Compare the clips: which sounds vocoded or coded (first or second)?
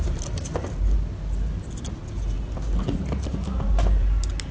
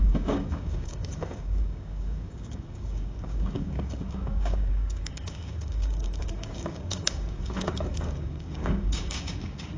second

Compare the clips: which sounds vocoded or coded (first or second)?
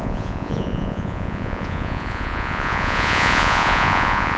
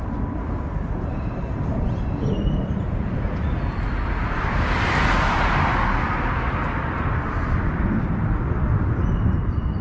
first